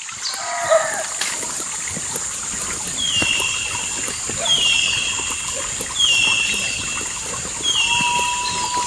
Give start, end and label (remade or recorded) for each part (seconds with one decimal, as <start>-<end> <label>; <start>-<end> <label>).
0.0-8.9 recorded